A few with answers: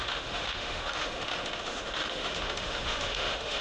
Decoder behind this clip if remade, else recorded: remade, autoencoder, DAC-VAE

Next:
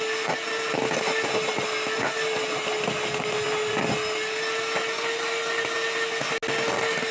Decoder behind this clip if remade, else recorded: recorded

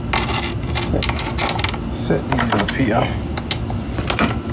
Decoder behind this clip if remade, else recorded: recorded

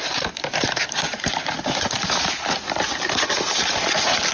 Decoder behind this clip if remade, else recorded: remade, vocoder, BigVGAN v2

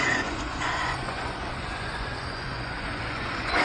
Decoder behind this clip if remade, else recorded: remade, vocoder, Vocos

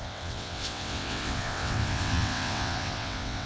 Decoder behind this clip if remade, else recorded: remade, vocoder, WaveNeXt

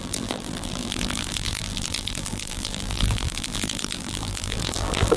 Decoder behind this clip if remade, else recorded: remade, vocoder, BigVGAN v2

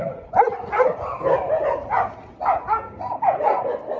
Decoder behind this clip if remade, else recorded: recorded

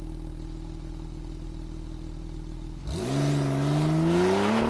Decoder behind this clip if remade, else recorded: recorded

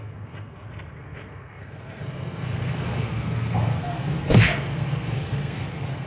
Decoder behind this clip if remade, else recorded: remade, codec, SNAC